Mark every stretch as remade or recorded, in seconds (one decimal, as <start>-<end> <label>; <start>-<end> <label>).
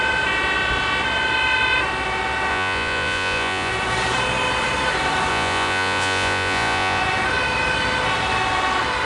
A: 0.0-2.5 recorded; 2.5-3.7 remade; 3.7-5.3 recorded; 5.3-7.0 remade; 7.0-9.0 recorded